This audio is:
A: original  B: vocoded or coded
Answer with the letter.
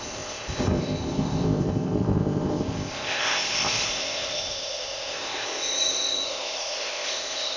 B